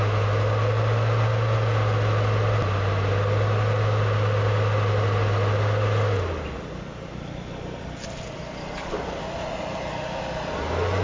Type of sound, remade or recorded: recorded